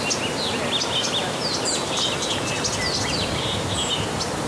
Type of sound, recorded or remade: recorded